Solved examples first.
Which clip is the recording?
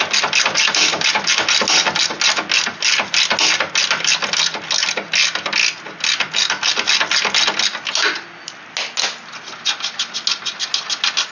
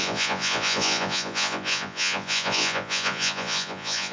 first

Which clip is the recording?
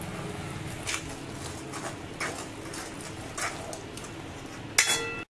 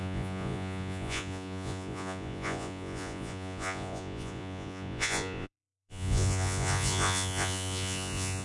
first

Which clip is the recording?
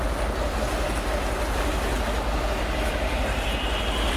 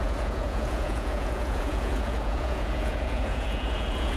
first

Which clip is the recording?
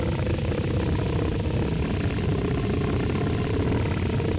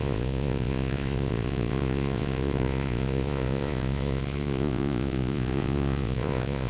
first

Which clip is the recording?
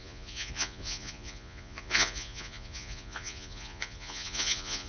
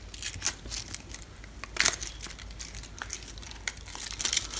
second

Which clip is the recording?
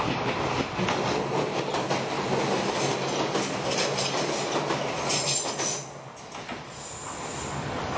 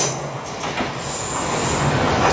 first